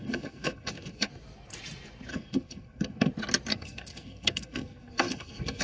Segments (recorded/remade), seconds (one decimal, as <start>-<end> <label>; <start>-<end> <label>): 0.0-1.1 remade; 1.1-2.1 recorded; 2.1-3.1 remade; 3.1-3.5 recorded; 3.5-5.6 remade